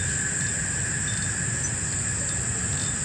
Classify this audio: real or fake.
real